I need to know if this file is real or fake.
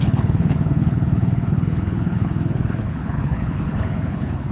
fake